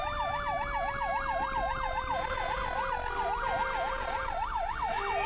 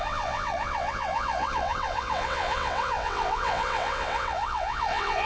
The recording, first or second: first